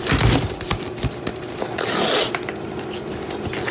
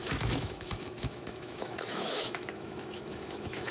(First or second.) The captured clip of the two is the first